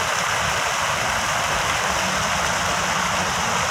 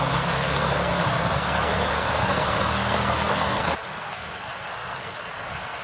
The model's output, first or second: second